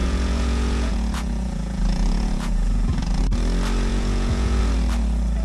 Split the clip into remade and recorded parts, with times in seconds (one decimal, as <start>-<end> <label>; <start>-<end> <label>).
0.0-3.2 remade; 3.2-3.9 recorded; 3.9-4.6 remade; 4.6-5.4 recorded